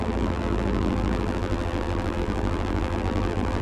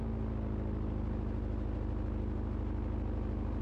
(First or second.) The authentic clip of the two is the second